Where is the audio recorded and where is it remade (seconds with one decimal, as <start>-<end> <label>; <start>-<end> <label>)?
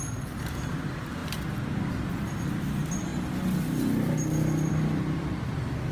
0.0-1.2 remade; 1.2-2.5 recorded; 2.5-3.1 remade; 3.1-4.7 recorded; 4.7-5.9 remade